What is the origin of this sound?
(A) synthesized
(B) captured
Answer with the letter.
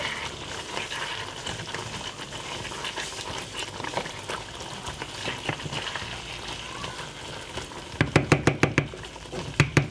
B